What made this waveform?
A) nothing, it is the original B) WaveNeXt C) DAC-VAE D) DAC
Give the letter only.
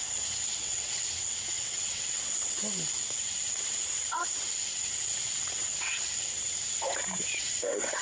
B